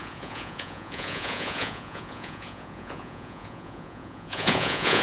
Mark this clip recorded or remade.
remade